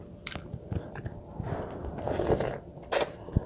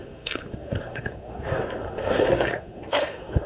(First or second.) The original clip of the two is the first